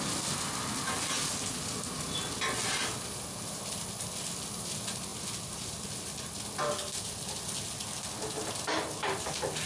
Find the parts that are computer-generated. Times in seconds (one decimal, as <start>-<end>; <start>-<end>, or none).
none